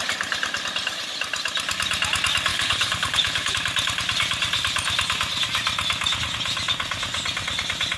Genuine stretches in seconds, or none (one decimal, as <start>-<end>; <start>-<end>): 0.0-2.5; 3.5-8.0